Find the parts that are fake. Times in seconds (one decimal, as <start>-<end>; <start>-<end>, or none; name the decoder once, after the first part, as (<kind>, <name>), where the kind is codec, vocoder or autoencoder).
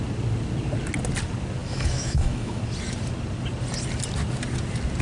1.6-2.6 (autoencoder, DAC-VAE)